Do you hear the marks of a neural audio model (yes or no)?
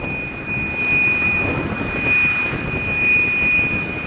no